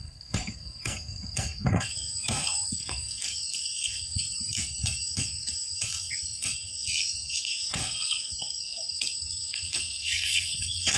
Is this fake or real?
fake